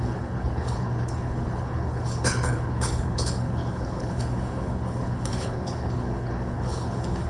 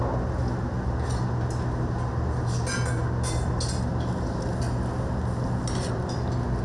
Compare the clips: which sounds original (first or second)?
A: second